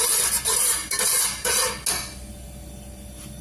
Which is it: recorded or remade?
recorded